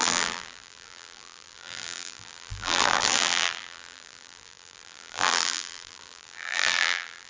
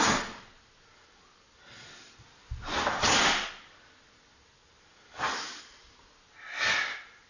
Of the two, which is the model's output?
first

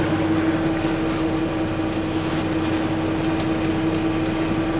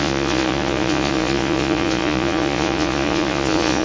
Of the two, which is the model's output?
second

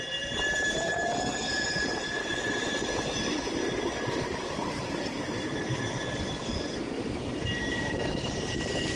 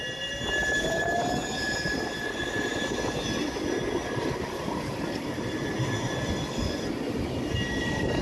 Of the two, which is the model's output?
first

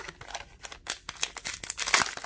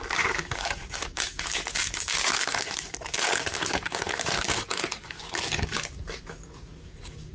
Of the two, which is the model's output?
second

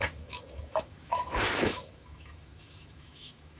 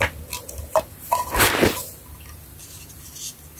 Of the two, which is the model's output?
first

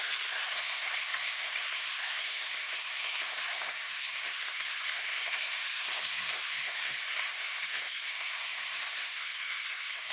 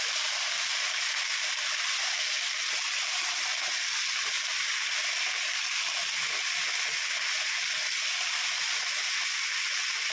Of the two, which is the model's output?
first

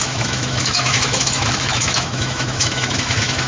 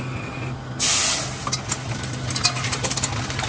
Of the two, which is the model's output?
first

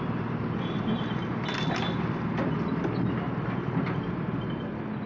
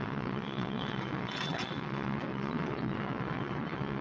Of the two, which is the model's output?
second